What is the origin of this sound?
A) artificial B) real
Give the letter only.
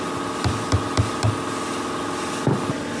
B